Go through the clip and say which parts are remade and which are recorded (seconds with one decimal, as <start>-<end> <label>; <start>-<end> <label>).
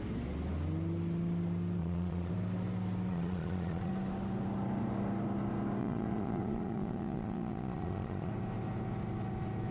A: 0.0-1.8 recorded; 1.8-2.3 remade; 2.3-3.1 recorded; 3.1-3.9 remade; 3.9-5.8 recorded; 5.8-8.3 remade; 8.3-9.7 recorded